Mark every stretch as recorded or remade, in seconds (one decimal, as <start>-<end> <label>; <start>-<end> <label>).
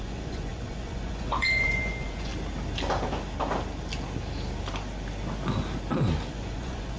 0.0-2.3 remade; 2.3-6.3 recorded; 6.3-7.0 remade